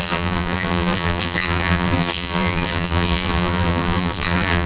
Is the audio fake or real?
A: fake